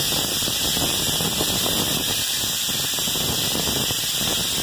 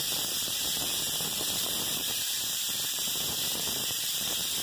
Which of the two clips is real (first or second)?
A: first